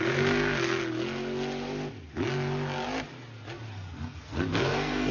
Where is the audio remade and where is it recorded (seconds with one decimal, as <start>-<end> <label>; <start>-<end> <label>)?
0.0-0.8 remade; 0.8-3.9 recorded; 3.9-5.1 remade